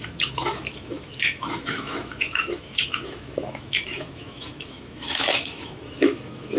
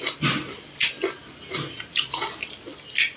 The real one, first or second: second